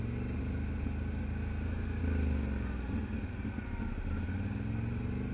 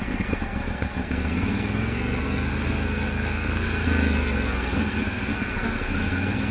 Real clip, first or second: first